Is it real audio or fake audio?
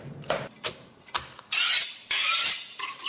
fake